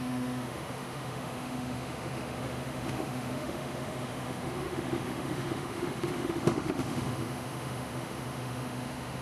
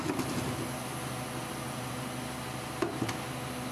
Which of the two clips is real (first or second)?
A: second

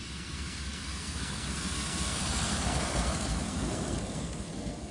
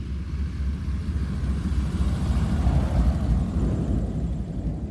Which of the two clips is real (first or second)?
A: second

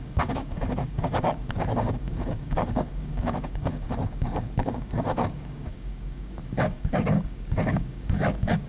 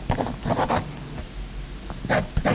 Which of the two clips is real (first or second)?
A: second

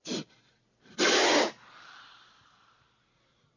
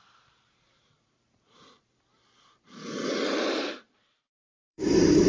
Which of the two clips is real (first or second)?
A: first